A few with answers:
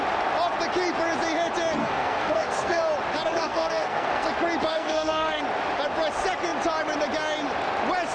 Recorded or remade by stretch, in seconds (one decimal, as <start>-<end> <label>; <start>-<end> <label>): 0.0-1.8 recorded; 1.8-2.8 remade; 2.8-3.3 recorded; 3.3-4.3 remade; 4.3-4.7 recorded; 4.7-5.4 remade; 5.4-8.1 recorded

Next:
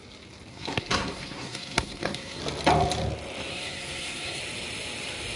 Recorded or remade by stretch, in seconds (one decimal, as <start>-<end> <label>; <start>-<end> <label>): 0.0-0.5 recorded; 0.5-2.4 remade; 2.4-3.5 recorded; 3.5-4.4 remade; 4.4-5.4 recorded

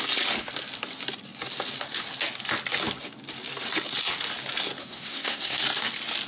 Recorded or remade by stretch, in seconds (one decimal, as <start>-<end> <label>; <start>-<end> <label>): 0.0-4.8 recorded; 4.8-5.6 remade; 5.6-6.3 recorded

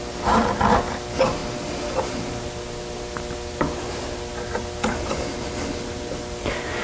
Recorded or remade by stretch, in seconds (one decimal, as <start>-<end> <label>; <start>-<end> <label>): 0.0-6.8 recorded